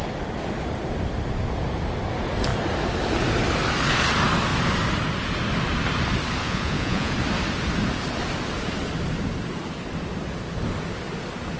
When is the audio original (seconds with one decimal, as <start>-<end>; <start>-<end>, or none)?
0.0-6.4; 7.1-11.6